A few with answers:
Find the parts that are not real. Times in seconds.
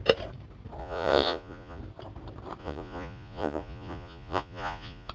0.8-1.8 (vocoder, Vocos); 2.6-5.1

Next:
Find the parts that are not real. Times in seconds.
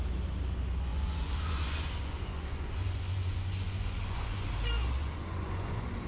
0.9-4.5 (vocoder, Vocos); 5.0-6.1